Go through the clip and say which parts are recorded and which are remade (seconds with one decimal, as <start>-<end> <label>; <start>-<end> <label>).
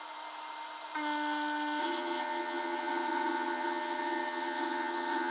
0.0-1.8 recorded; 1.8-5.3 remade